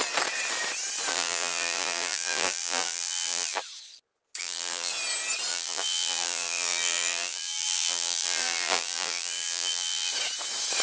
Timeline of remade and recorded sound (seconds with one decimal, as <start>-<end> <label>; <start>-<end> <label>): 0.0-1.1 recorded; 1.1-3.6 remade; 3.6-4.4 recorded; 4.4-4.9 remade; 4.9-5.5 recorded; 5.5-10.1 remade; 10.1-10.8 recorded